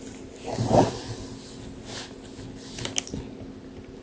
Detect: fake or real real